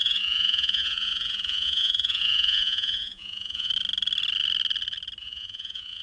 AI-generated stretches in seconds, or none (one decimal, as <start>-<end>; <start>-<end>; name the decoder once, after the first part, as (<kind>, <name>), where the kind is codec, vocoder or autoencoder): 0.0-3.7 (vocoder, Vocos); 5.2-6.0